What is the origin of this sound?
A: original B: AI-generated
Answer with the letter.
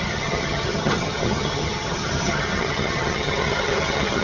B